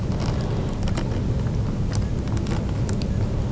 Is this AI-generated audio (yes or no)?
no